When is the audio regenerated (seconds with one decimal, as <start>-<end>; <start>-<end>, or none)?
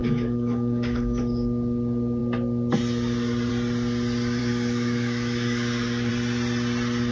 0.0-1.2; 4.4-6.1